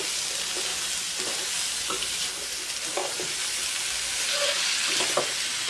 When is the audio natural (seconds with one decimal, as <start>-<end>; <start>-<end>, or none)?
0.0-5.7